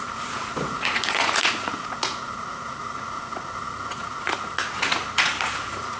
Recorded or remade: remade